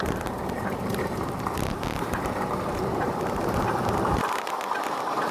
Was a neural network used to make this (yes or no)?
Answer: yes